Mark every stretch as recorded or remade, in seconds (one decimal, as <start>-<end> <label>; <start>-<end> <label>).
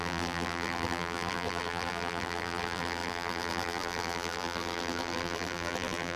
0.0-6.2 remade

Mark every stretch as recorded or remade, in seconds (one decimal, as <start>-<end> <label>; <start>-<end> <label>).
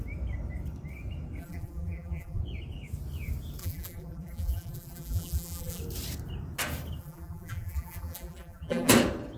0.0-1.4 recorded; 1.4-2.4 remade; 2.4-3.6 recorded; 3.6-5.8 remade; 5.8-7.0 recorded; 7.0-8.9 remade; 8.9-9.4 recorded